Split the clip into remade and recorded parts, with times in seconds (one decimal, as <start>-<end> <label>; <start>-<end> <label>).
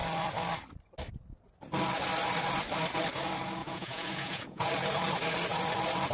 0.0-3.6 recorded; 3.6-4.7 remade; 4.7-6.1 recorded